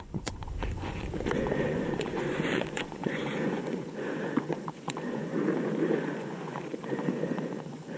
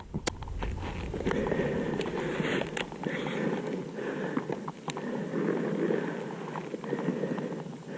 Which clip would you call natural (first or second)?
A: second